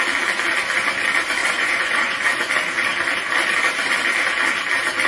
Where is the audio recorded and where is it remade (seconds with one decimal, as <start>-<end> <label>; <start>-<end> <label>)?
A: 0.0-1.4 recorded; 1.4-2.5 remade; 2.5-5.1 recorded